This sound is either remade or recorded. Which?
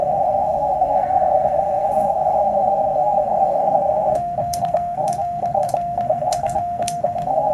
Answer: remade